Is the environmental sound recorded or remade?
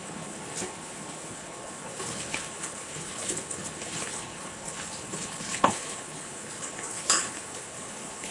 remade